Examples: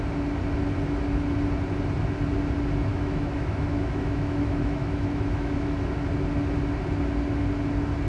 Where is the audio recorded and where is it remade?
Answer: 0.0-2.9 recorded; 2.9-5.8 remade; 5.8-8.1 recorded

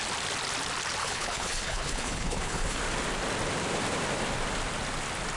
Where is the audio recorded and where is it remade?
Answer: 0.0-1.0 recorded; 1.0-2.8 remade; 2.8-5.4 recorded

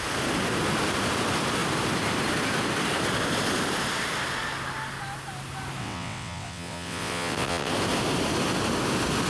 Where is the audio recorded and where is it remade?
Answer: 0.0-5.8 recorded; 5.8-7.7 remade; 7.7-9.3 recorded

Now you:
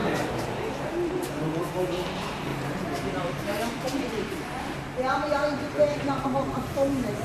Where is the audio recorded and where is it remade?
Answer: 0.0-7.2 remade

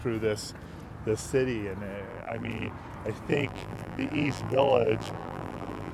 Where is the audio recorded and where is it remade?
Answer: 0.0-2.1 recorded; 2.1-2.7 remade; 2.7-3.3 recorded; 3.3-5.9 remade

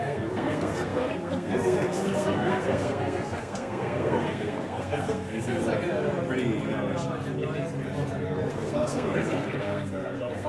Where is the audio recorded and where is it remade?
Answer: 0.0-5.6 remade; 5.6-8.5 recorded; 8.5-10.5 remade

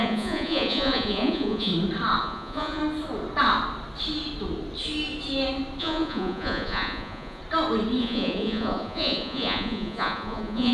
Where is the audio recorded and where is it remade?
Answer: 0.0-1.7 remade; 1.7-2.2 recorded; 2.2-2.8 remade; 2.8-5.8 recorded; 5.8-7.4 remade; 7.4-8.0 recorded; 8.0-10.7 remade

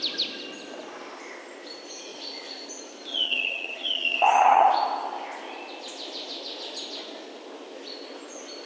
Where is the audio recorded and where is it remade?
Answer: 0.0-3.1 recorded; 3.1-4.7 remade; 4.7-8.7 recorded